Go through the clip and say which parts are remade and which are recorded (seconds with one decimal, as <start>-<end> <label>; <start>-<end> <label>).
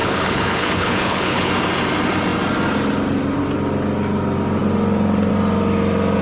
0.0-1.5 remade; 1.5-6.2 recorded